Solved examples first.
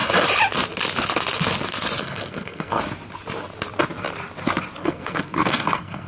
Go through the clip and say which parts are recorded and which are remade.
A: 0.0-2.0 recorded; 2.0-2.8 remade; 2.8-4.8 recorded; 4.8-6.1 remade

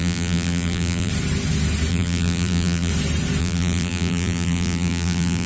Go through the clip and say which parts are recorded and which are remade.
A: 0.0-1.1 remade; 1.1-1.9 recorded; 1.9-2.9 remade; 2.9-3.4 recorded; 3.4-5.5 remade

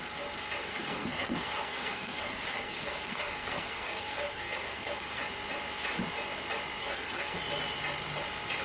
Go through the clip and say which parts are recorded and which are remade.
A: 0.0-0.6 recorded; 0.6-5.2 remade; 5.2-6.8 recorded; 6.8-7.4 remade; 7.4-8.6 recorded

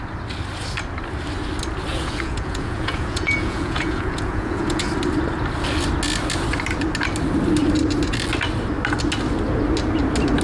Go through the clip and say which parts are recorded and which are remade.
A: 0.0-1.9 recorded; 1.9-4.9 remade; 4.9-10.4 recorded

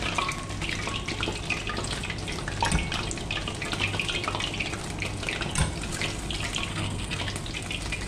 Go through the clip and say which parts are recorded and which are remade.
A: 0.0-6.7 recorded; 6.7-7.2 remade; 7.2-8.1 recorded

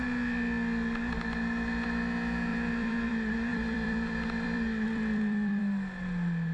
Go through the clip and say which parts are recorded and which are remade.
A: 0.0-2.5 recorded; 2.5-3.1 remade; 3.1-3.5 recorded; 3.5-5.6 remade; 5.6-6.5 recorded